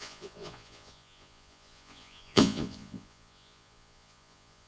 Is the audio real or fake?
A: fake